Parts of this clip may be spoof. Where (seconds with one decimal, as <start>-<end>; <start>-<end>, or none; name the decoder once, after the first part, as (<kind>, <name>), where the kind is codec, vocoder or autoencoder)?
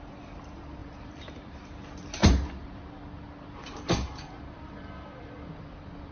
0.8-1.6 (vocoder, BigVGAN v2); 2.2-6.1